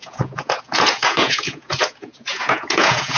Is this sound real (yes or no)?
no